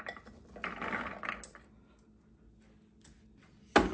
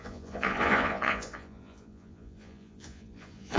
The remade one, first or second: second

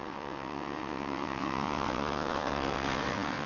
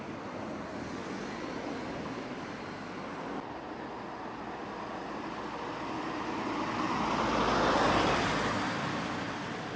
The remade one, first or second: first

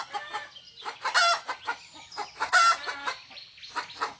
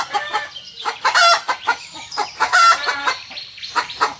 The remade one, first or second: second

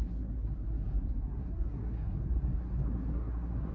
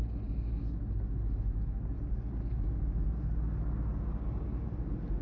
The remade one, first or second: first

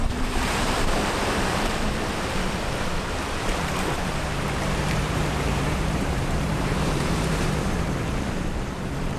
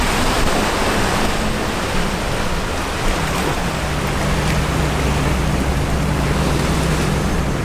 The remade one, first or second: first